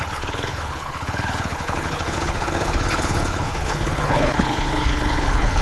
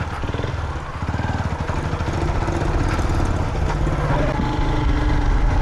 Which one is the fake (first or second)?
first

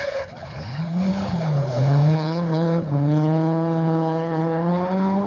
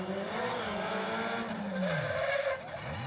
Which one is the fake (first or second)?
first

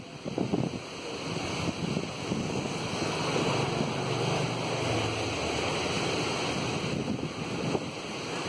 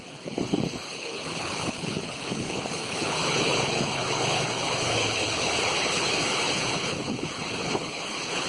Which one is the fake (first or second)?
second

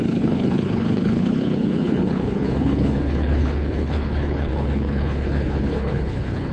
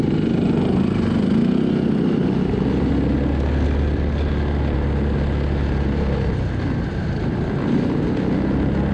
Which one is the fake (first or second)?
first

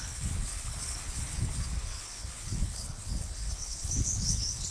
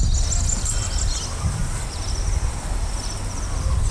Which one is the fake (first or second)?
first